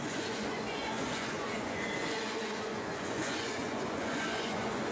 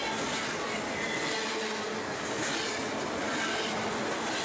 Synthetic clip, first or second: first